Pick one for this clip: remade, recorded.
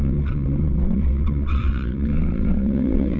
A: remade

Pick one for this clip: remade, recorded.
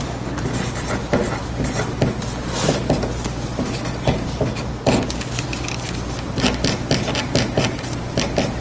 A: recorded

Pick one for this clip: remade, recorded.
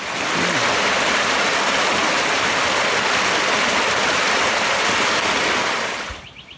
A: recorded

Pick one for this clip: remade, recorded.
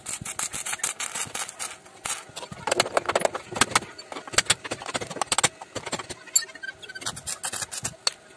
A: recorded